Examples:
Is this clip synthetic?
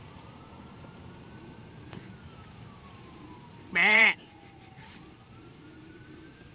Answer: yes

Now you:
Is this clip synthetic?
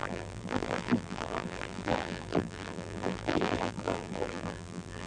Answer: yes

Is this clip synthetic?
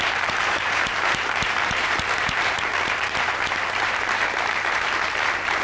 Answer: yes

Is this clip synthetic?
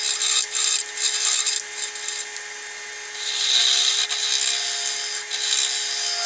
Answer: no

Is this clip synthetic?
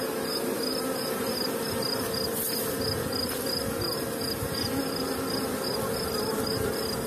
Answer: no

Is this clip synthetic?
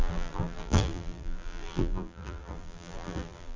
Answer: yes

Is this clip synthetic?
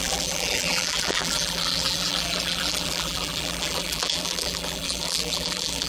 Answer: yes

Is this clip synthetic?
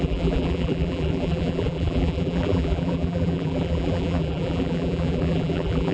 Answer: yes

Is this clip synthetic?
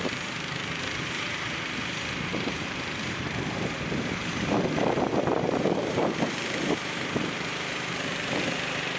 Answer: yes